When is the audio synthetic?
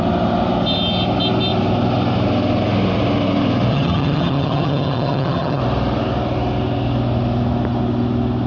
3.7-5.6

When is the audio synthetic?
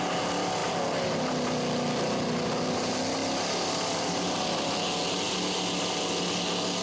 none